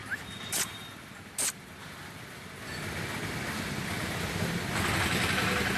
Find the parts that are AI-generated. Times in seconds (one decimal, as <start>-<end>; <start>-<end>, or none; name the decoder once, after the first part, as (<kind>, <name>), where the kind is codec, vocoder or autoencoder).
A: none